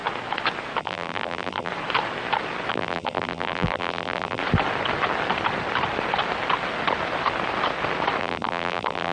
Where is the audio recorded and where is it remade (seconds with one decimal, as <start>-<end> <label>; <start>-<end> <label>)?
0.0-0.8 recorded; 0.8-1.7 remade; 1.7-2.7 recorded; 2.7-4.4 remade; 4.4-8.2 recorded; 8.2-9.1 remade